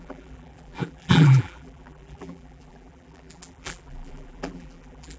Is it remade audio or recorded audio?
remade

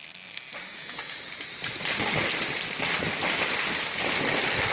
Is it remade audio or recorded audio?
recorded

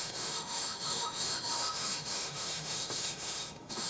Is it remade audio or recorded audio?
remade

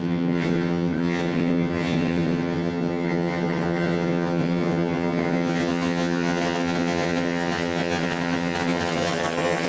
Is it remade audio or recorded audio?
remade